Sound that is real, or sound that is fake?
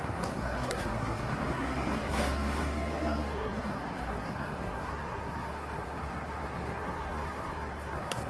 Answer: fake